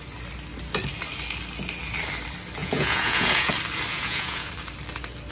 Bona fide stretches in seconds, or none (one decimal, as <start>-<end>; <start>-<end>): 0.0-2.6; 3.5-3.9; 4.5-5.3